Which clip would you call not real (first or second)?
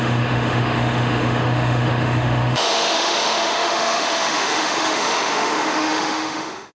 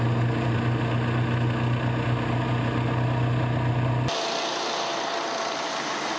first